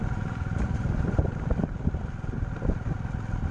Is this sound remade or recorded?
recorded